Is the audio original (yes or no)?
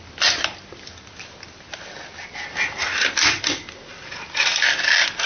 yes